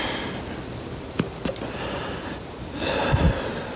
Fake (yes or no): no